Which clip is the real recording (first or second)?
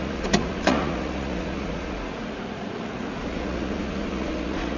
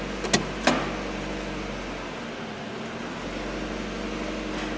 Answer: second